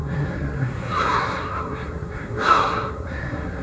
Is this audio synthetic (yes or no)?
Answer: yes